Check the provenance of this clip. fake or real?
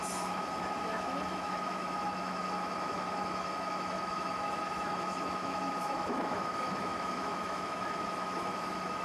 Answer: fake